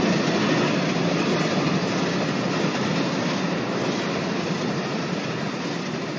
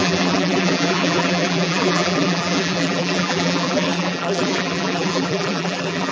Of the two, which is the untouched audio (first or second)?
first